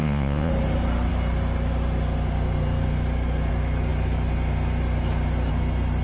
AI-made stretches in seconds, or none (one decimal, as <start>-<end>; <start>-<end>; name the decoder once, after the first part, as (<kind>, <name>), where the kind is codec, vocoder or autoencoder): 0.0-0.5 (vocoder, Vocos)

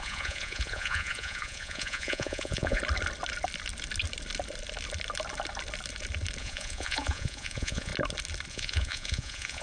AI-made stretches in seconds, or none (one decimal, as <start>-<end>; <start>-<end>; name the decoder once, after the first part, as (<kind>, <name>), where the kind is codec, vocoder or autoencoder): 0.0-2.8 (vocoder, Vocos); 6.4-7.9; 8.5-9.6

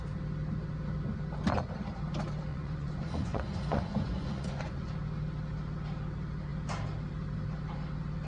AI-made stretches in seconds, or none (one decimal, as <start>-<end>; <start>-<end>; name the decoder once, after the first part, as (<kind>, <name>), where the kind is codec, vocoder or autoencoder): 2.5-4.9 (vocoder, Vocos)

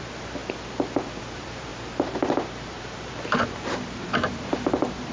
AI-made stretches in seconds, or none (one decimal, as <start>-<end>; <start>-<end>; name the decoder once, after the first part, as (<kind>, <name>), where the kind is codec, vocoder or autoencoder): 0.0-0.4 (vocoder, BigVGAN v2); 1.2-5.1

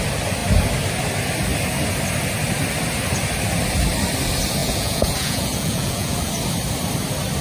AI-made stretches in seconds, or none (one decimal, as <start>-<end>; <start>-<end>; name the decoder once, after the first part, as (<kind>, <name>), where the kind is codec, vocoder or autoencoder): 4.6-6.2 (vocoder, Vocos)

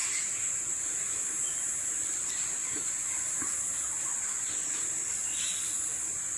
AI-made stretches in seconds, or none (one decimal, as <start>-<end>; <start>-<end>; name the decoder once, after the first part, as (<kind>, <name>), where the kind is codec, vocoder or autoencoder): none

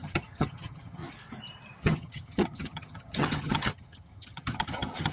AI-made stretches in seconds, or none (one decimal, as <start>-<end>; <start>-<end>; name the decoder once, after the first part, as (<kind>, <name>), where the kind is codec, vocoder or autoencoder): 0.0-1.0 (vocoder, HiFi-GAN); 1.8-5.1